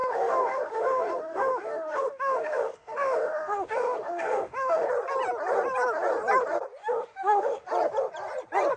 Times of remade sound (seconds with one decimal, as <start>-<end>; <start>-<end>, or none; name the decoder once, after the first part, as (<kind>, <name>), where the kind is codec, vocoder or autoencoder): 0.0-4.9 (autoencoder, DAC-VAE); 6.8-7.7